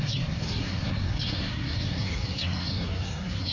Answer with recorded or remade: remade